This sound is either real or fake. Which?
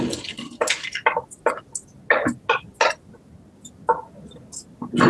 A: real